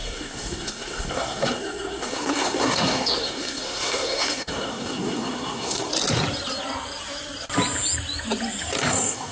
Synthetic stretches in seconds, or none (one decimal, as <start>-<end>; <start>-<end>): 0.0-5.9; 8.9-9.3